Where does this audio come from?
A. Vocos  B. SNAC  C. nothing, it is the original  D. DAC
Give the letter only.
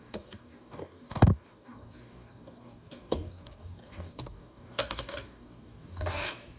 D